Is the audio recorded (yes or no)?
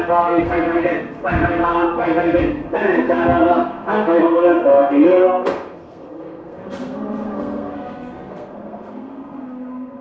no